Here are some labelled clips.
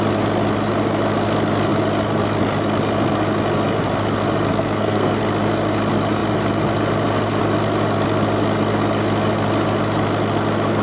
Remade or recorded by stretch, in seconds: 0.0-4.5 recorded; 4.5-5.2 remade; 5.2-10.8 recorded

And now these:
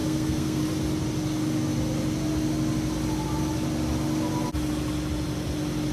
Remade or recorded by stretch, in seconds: 0.0-0.6 remade; 0.6-5.9 recorded

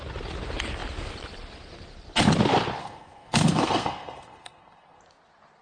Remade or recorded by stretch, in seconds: 0.0-2.8 recorded; 2.8-5.0 remade; 5.0-5.6 recorded